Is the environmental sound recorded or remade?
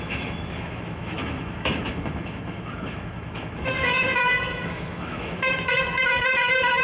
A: remade